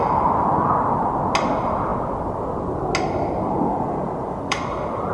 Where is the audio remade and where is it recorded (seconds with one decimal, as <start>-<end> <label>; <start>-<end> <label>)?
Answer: 0.0-0.4 recorded; 0.4-1.2 remade; 1.2-4.2 recorded; 4.2-5.1 remade